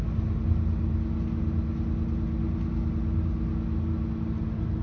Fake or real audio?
real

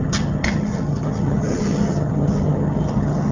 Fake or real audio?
fake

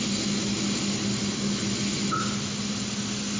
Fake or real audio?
real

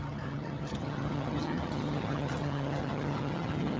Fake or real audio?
fake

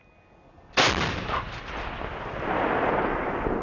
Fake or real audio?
real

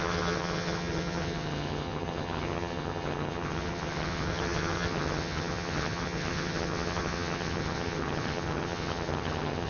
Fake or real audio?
fake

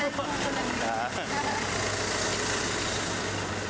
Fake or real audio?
real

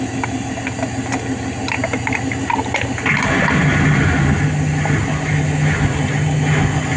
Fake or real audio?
real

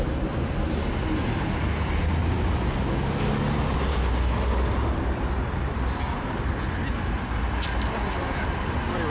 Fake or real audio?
real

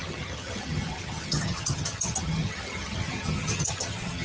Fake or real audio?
fake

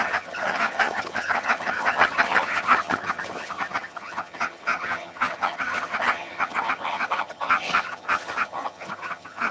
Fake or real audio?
fake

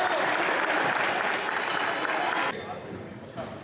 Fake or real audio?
real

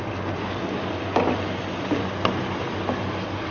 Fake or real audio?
real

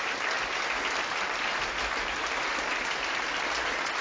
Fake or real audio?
real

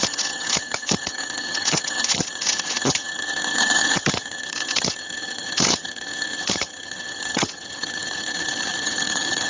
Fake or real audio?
fake